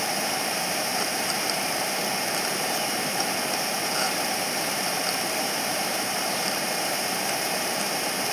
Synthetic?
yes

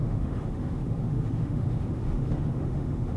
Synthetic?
yes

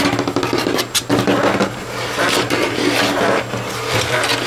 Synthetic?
no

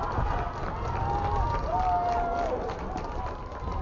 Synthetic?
no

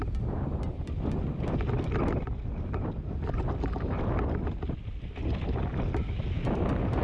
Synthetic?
no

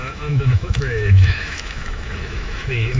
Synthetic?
yes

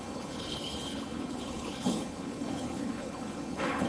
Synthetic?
yes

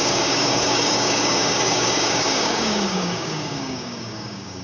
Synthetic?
yes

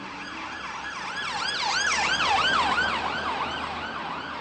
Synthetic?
no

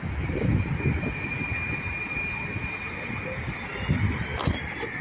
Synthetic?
no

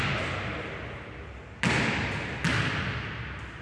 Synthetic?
no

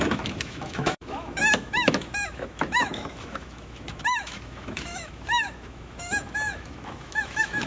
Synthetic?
yes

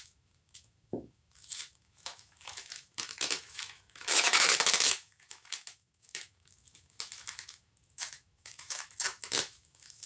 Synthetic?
yes